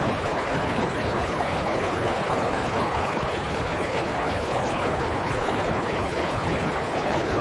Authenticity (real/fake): fake